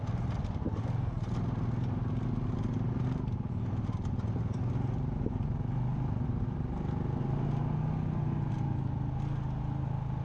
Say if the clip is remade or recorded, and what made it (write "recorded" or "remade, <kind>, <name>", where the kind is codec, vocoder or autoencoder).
recorded